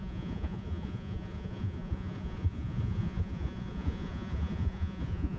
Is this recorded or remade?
remade